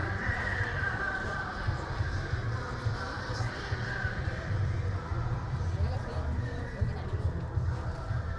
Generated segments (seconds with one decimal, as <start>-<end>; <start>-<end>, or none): 0.0-4.6; 5.1-5.7